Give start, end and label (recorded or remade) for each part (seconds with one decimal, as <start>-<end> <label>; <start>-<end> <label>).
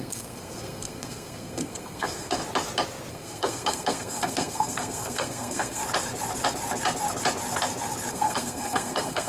0.0-2.4 remade; 2.4-3.1 recorded; 3.1-5.8 remade; 5.8-8.1 recorded; 8.1-9.3 remade